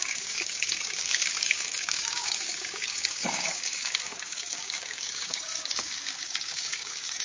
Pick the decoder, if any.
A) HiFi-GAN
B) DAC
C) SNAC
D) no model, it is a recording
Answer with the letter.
B